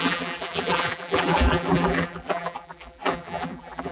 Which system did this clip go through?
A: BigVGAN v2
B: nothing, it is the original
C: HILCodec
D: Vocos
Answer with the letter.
A